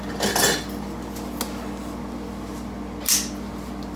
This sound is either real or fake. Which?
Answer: real